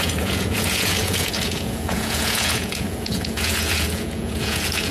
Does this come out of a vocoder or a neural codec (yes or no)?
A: yes